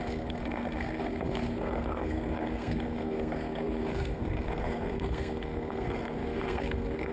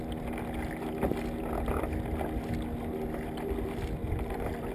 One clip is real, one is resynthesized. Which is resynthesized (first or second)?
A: first